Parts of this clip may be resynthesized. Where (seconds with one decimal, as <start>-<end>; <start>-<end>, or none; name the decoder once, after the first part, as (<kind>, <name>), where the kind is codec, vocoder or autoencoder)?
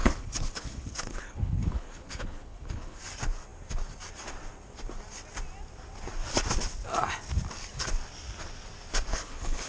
0.0-3.0 (codec, HILCodec); 9.1-9.7